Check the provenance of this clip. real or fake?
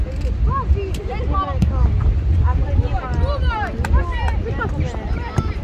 real